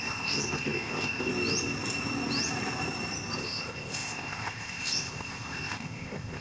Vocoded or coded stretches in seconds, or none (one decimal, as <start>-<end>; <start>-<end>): 0.0-1.3; 3.4-6.4